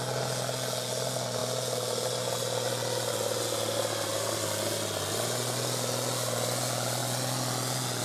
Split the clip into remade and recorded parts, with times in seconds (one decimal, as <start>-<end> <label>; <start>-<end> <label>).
0.0-8.0 recorded